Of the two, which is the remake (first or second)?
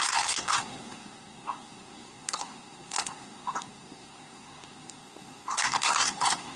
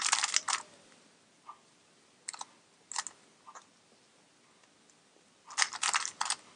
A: first